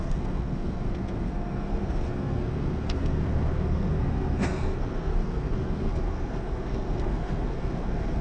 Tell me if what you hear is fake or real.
fake